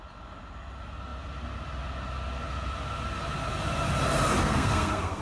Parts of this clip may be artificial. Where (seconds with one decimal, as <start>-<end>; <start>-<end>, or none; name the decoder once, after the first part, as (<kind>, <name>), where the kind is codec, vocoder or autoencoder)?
4.4-5.2 (codec, SNAC)